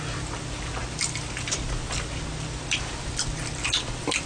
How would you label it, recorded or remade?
recorded